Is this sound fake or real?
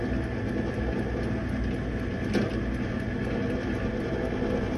real